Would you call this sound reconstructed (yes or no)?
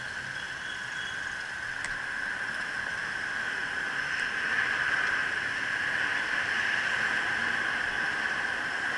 no